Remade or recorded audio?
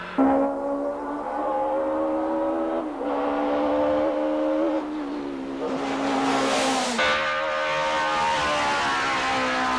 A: recorded